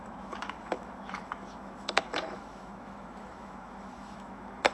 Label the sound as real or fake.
fake